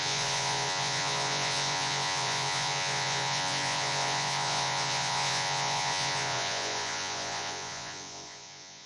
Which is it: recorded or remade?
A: remade